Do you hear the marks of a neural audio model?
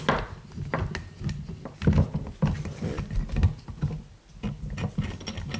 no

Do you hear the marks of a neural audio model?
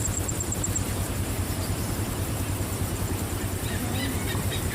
yes